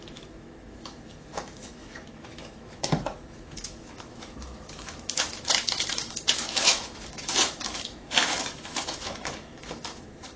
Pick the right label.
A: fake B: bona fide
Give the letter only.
A